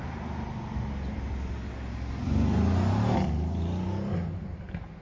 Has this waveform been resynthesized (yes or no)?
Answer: no